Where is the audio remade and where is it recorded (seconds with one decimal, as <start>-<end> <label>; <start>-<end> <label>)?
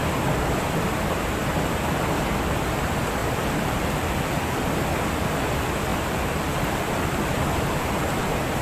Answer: 0.0-3.2 recorded; 3.2-4.6 remade; 4.6-5.9 recorded; 5.9-7.9 remade; 7.9-8.6 recorded